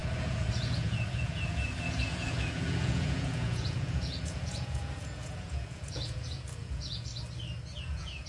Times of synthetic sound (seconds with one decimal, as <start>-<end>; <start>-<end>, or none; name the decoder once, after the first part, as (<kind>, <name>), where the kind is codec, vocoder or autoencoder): 0.0-7.1 (vocoder, Vocos); 7.8-8.3